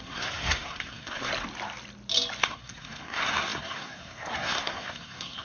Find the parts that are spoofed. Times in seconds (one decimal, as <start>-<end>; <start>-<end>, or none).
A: 0.0-1.3; 2.4-5.4